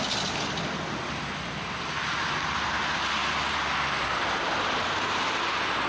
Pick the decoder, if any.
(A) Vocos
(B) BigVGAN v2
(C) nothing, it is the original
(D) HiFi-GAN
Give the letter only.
C